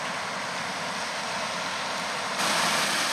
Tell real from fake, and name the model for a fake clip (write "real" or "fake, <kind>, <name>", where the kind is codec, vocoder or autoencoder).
real